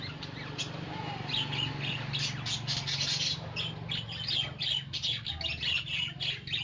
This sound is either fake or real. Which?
real